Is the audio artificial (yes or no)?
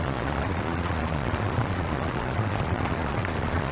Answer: yes